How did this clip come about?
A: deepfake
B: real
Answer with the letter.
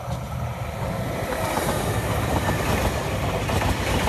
B